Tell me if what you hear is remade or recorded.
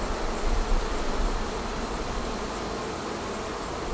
recorded